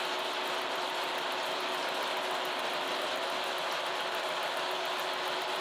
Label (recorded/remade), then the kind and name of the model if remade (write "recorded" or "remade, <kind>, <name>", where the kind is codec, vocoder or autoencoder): recorded